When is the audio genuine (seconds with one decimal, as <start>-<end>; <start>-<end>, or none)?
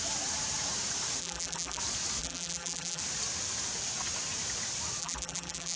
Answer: 0.0-1.2; 1.8-2.2; 3.0-5.0